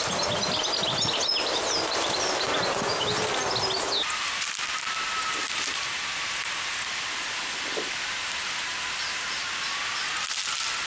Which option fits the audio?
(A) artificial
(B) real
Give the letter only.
B